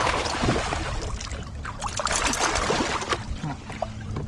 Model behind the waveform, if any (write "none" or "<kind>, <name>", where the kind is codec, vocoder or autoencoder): none